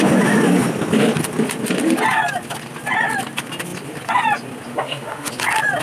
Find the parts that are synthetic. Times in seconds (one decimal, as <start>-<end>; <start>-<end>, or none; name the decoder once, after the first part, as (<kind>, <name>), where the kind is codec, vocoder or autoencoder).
4.7-5.3 (autoencoder, DAC-VAE)

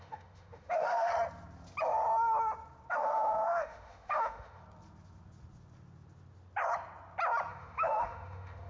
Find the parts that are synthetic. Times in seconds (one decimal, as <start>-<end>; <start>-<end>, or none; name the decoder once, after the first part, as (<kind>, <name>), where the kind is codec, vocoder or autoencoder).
0.0-1.1 (autoencoder, DAC-VAE); 2.9-4.6; 7.5-8.7